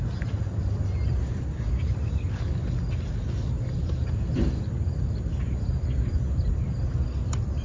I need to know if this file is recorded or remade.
recorded